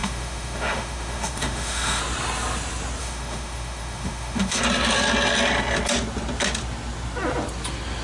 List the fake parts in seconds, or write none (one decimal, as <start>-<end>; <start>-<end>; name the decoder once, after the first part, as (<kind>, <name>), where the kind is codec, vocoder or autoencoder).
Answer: 0.0-2.0 (autoencoder, DAC-VAE); 3.0-4.6